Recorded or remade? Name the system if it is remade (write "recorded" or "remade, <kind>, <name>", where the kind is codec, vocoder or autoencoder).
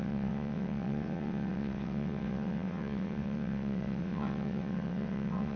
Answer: remade, vocoder, WaveNeXt